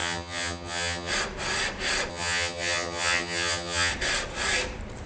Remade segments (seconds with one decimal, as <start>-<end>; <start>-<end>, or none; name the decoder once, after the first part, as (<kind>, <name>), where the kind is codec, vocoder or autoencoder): 0.0-1.1 (vocoder, HiFi-GAN); 2.1-3.9